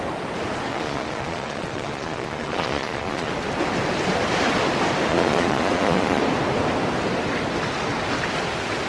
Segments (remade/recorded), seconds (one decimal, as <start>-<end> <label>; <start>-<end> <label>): 0.0-0.7 recorded; 0.7-3.3 remade; 3.3-5.1 recorded; 5.1-6.2 remade; 6.2-8.9 recorded